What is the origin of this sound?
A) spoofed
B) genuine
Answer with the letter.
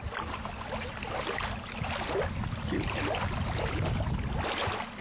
B